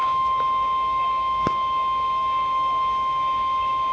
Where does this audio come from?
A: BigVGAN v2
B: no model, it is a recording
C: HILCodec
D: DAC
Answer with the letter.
D